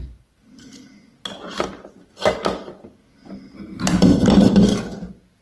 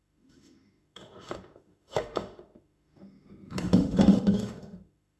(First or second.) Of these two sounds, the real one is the first